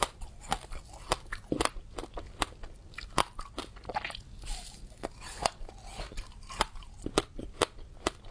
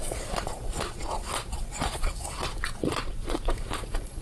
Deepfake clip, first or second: second